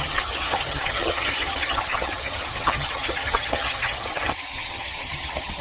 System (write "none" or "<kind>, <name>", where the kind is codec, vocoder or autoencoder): vocoder, HiFi-GAN